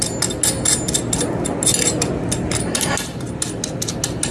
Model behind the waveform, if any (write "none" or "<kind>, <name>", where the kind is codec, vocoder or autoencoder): none